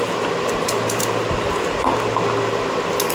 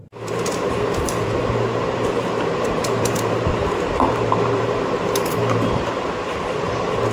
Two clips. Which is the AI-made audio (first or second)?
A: second